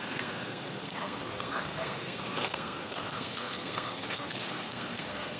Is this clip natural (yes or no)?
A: no